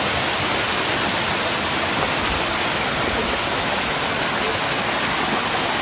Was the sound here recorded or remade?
recorded